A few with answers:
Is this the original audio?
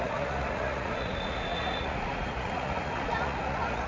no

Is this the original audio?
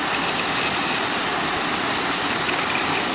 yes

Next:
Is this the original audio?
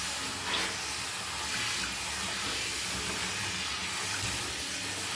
yes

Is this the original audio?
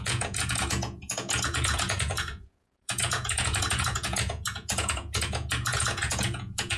no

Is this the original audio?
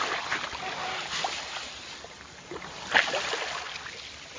yes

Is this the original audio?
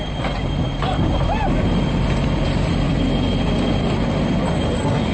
yes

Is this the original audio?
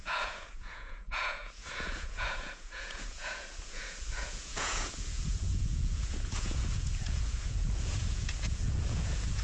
no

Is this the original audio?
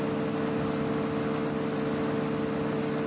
yes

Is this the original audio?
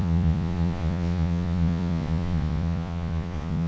no